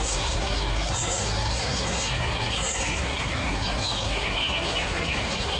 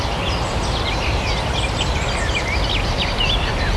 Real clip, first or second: second